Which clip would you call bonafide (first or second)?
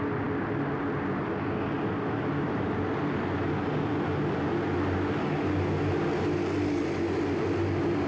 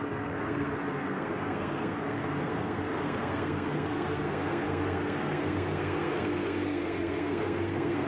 first